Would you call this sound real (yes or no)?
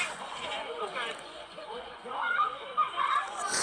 no